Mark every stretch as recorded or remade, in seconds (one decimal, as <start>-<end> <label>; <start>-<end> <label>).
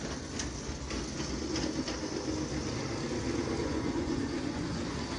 0.0-3.6 recorded; 3.6-4.8 remade; 4.8-5.2 recorded